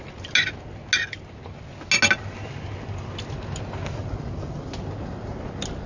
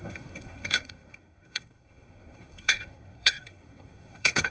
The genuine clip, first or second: first